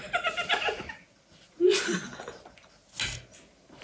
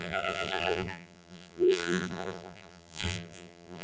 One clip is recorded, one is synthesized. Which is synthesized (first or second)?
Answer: second